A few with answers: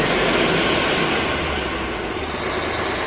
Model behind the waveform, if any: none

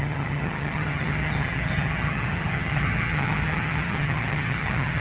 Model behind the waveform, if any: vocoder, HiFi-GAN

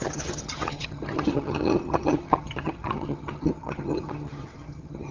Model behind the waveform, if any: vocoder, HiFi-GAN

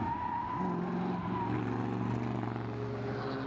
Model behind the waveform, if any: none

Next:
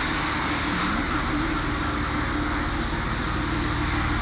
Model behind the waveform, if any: none